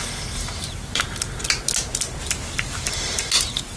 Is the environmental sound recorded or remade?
recorded